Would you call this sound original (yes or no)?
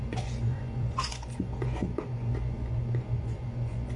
no